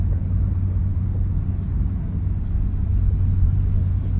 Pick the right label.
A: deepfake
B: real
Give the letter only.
B